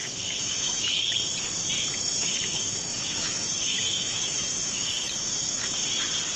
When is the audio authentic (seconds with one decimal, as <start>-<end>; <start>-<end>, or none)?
0.8-1.9; 5.7-6.4